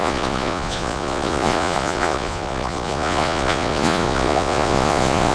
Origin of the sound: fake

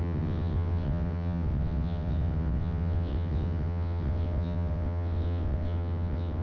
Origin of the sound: fake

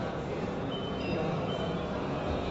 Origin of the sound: fake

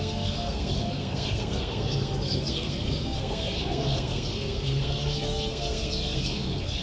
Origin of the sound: fake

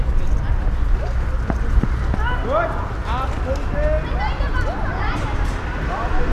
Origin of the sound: real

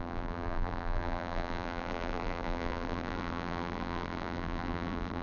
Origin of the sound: fake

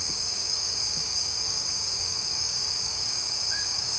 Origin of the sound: fake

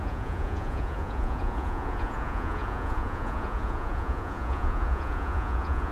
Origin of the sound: fake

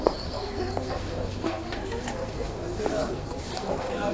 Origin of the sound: fake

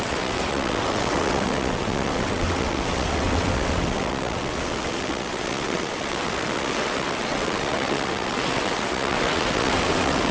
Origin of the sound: fake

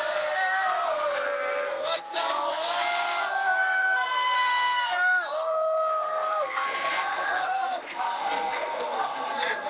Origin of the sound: fake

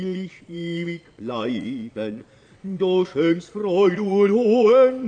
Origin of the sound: fake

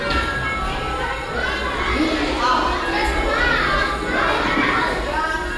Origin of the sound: real